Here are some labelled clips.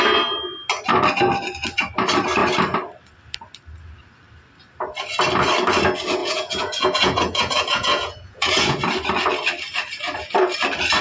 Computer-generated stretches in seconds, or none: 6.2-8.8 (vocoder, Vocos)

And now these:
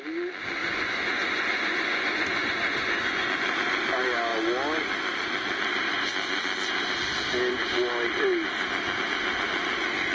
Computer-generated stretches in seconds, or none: 0.6-3.3 (vocoder, Vocos)

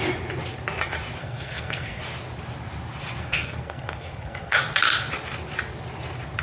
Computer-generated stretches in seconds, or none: 1.2-2.0 (codec, SNAC); 3.2-4.6